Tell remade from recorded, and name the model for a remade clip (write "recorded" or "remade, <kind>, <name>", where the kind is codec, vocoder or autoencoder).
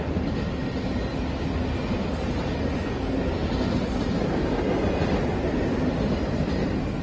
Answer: recorded